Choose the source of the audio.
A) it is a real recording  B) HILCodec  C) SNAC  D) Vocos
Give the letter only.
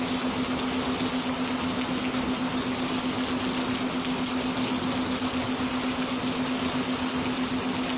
A